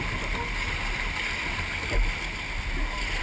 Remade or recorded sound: recorded